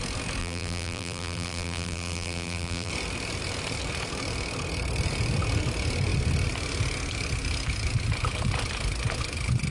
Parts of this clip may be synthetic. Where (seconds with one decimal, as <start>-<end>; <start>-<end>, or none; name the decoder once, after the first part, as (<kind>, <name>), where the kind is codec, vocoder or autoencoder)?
0.4-2.9 (vocoder, BigVGAN v2)